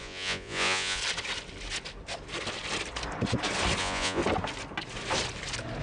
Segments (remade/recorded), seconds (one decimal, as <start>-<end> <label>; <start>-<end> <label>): 0.0-1.0 remade; 1.0-3.8 recorded; 3.8-4.2 remade; 4.2-5.8 recorded